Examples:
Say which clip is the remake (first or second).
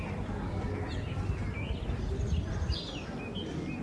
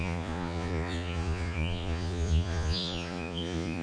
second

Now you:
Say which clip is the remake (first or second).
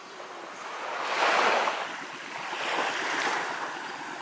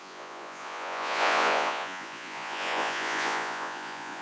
second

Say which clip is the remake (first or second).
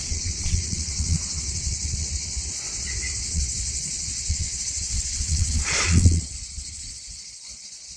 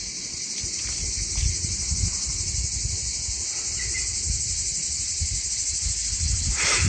first